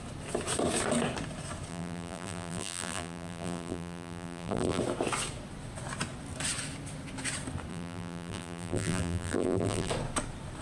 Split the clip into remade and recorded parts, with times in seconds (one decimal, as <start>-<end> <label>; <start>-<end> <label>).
0.0-1.7 recorded; 1.7-4.8 remade; 4.8-7.7 recorded; 7.7-9.9 remade; 9.9-10.6 recorded